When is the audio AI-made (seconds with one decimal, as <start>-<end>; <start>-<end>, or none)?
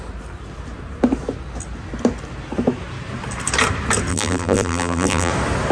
4.1-5.3